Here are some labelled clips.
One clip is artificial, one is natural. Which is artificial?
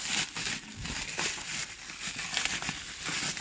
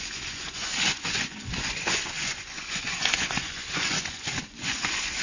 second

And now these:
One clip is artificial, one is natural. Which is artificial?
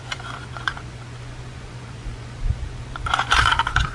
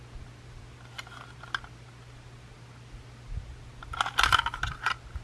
first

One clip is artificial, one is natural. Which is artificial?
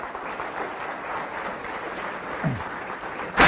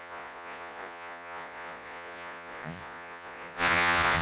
second